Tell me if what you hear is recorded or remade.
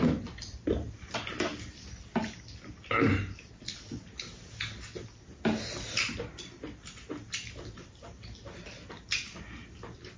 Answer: recorded